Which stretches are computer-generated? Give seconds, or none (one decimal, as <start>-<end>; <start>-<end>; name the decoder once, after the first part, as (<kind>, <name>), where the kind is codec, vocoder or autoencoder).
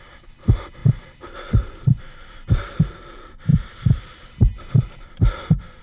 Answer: 0.8-2.7 (vocoder, BigVGAN v2); 3.5-5.3